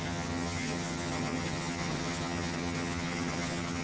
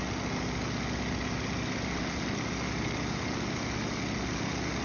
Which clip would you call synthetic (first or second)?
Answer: first